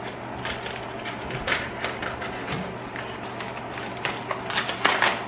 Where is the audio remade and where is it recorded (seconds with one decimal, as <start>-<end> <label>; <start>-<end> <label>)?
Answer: 0.0-5.3 recorded